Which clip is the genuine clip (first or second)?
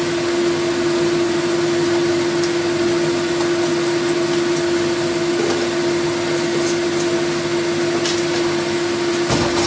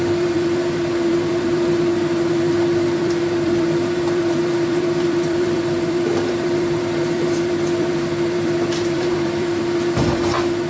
first